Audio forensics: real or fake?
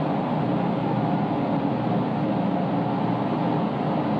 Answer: real